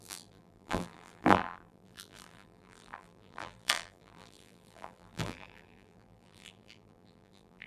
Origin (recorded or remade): remade